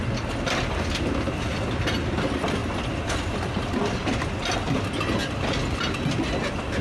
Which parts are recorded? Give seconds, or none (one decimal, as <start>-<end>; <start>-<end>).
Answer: 0.0-6.8